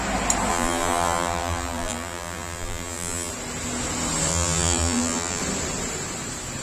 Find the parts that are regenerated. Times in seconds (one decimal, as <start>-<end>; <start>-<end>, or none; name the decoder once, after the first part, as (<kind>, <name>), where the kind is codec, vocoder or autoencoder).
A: 0.5-3.3 (vocoder, BigVGAN v2); 4.3-5.4